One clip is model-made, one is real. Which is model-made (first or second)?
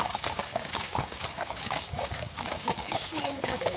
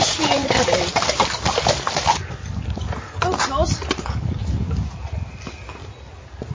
first